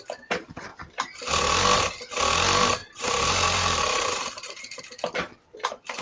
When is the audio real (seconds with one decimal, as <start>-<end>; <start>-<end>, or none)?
0.0-2.8; 4.8-6.0